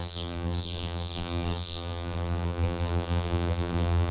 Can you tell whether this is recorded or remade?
remade